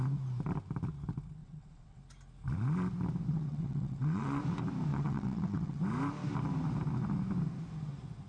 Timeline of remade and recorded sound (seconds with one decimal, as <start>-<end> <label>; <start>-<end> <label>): 0.0-1.4 recorded; 1.4-2.0 remade; 2.0-3.3 recorded; 3.3-4.4 remade; 4.4-4.9 recorded; 4.9-5.8 remade; 5.8-8.3 recorded